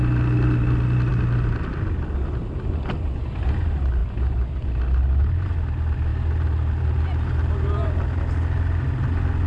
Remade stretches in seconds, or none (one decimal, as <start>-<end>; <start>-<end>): none